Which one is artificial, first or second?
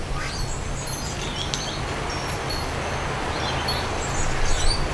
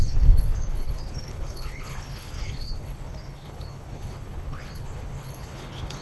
second